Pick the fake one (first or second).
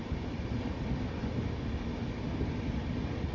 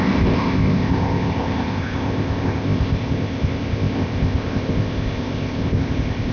second